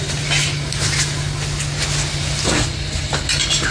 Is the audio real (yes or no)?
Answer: yes